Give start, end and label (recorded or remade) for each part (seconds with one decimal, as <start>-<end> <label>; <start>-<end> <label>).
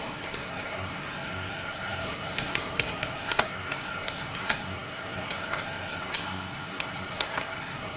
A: 0.0-8.0 remade